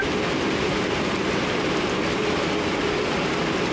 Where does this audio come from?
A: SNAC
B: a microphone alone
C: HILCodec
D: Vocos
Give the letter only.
B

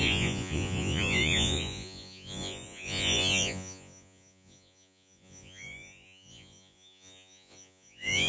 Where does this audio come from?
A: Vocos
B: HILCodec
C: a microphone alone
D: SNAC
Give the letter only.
A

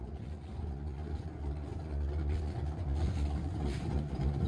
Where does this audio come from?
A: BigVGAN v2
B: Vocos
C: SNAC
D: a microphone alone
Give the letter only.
B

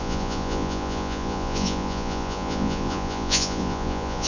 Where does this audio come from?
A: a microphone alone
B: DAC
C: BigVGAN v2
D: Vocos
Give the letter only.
D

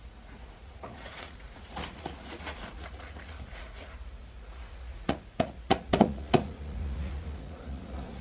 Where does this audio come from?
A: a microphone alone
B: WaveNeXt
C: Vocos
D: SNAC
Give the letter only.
C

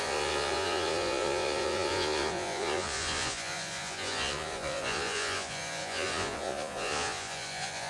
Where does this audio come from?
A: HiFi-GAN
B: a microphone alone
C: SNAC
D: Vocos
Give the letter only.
D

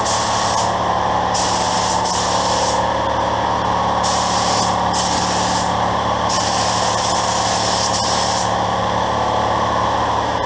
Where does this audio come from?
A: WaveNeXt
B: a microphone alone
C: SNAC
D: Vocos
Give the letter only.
B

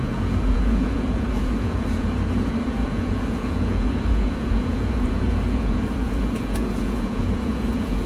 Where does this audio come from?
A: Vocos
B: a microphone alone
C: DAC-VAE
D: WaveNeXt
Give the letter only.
A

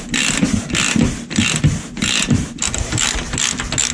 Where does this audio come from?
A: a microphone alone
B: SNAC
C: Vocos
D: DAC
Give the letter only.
A